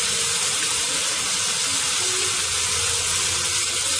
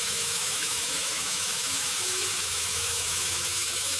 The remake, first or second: second